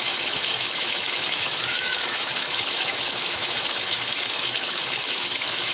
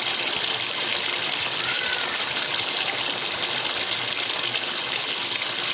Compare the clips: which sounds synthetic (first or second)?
first